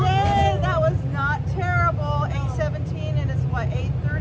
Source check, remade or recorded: recorded